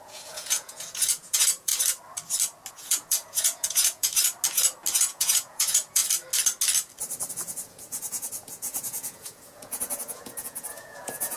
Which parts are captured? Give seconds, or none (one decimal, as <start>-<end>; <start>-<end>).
1.7-2.7; 4.1-4.9; 6.0-7.3